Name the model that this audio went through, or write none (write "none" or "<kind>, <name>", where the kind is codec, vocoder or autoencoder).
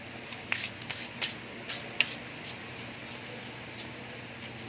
none